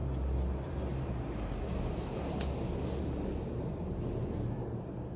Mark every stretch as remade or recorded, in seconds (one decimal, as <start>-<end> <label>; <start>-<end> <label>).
0.0-5.2 recorded